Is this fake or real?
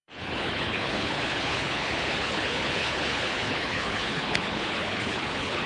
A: fake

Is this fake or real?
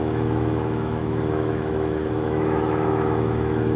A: fake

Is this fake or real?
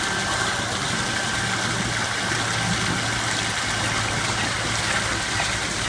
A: real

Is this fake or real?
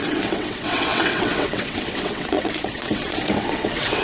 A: fake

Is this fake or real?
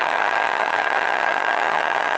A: fake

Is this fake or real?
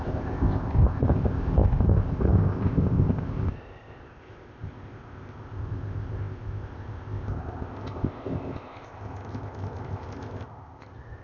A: fake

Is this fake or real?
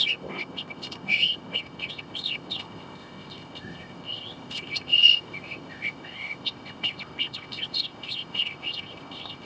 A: fake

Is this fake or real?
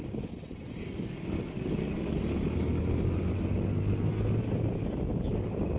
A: real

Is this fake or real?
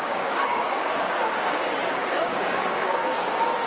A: fake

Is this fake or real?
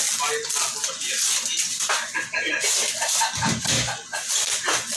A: real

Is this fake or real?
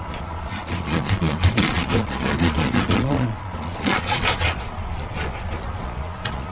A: fake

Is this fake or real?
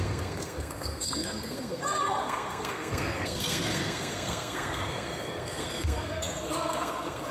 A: fake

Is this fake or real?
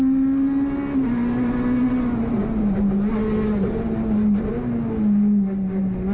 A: real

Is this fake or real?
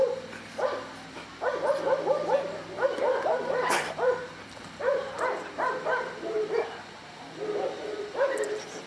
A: fake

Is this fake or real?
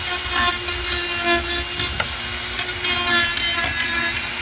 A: real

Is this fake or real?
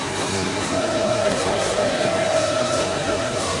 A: fake